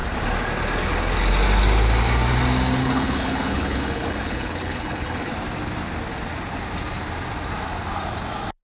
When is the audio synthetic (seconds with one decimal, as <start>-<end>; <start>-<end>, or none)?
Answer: 2.8-5.3